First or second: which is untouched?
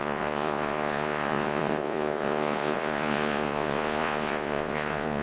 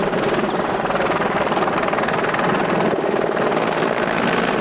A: second